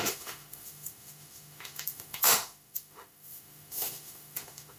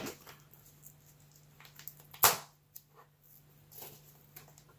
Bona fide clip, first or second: second